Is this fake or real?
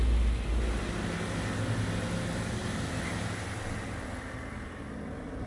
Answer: real